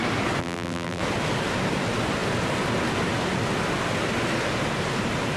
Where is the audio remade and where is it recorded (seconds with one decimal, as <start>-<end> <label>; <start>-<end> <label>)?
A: 0.0-0.4 recorded; 0.4-1.0 remade; 1.0-5.4 recorded